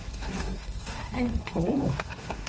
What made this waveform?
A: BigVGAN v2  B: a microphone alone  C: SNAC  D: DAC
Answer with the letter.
C